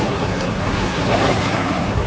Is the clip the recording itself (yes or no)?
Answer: no